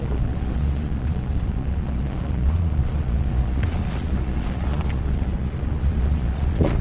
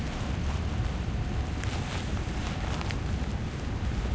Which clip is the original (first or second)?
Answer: second